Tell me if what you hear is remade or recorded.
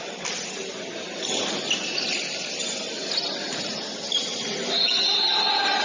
recorded